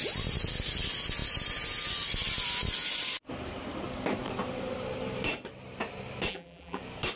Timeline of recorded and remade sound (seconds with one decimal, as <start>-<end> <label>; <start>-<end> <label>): 0.0-6.3 recorded; 6.3-6.8 remade; 6.8-7.2 recorded